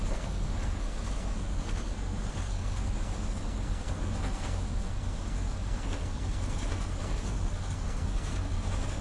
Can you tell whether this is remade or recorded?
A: remade